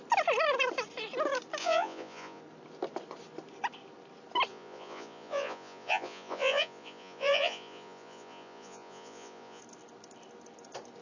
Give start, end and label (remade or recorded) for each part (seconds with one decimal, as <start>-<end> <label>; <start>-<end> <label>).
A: 0.0-1.6 recorded; 1.6-2.4 remade; 2.4-4.5 recorded; 4.5-9.6 remade; 9.6-11.0 recorded